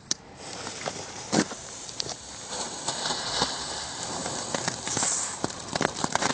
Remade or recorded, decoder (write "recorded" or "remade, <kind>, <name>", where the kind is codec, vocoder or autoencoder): remade, vocoder, BigVGAN v2